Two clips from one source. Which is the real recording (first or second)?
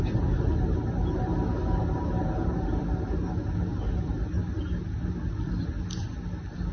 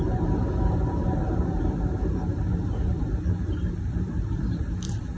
first